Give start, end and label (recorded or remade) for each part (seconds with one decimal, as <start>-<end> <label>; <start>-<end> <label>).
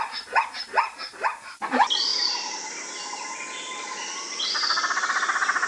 0.0-5.7 recorded